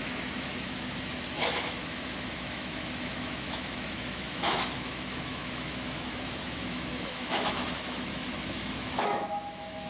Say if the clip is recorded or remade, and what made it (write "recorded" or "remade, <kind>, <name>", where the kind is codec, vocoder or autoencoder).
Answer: remade, autoencoder, DAC-VAE